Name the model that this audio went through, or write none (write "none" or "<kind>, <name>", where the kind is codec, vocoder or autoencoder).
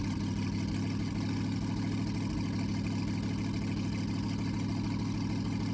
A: none